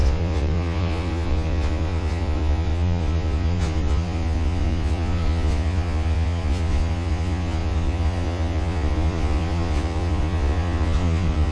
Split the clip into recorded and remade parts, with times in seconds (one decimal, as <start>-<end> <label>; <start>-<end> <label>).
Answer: 0.0-11.5 remade